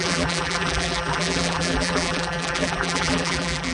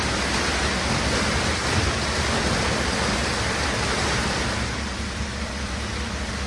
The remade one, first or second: first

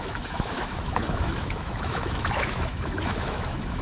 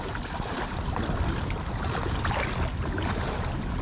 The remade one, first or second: first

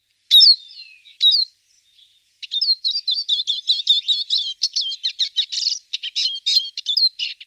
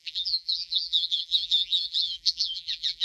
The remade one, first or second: second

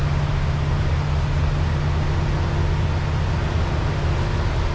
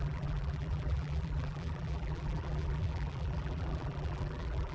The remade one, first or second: second